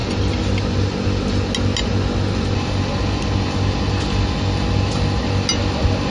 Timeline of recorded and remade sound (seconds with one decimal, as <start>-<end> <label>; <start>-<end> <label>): 0.0-6.1 recorded